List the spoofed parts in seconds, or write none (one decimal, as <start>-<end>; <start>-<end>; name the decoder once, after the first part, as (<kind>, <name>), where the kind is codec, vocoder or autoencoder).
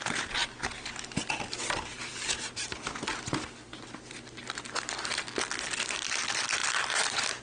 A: none